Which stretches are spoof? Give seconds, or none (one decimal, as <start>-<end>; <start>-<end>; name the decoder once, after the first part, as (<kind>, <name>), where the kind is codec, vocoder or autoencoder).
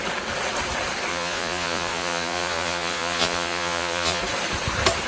1.1-4.2 (vocoder, Vocos)